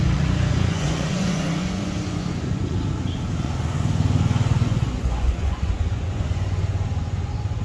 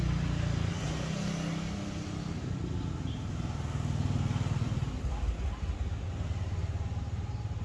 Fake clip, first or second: first